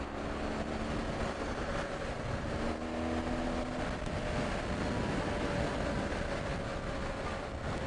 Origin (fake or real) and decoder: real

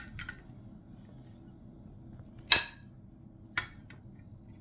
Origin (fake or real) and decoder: real